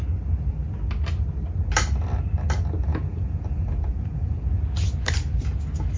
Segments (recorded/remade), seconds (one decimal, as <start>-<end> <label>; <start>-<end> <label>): 0.0-2.9 recorded; 2.9-4.6 remade; 4.6-6.0 recorded